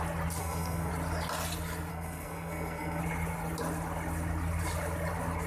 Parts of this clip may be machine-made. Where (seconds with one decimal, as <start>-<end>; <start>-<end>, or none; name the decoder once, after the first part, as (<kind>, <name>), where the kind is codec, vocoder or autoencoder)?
0.4-0.9 (codec, SNAC); 1.9-3.0